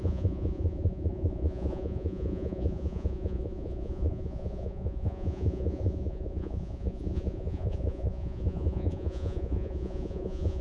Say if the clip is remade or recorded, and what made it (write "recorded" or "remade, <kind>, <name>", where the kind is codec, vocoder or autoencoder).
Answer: remade, vocoder, Vocos